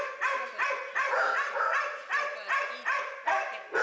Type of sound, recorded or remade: recorded